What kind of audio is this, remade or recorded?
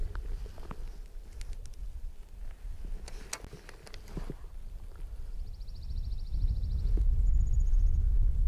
recorded